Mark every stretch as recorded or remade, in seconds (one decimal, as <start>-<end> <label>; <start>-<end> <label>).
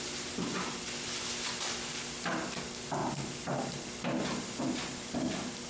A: 0.0-5.7 recorded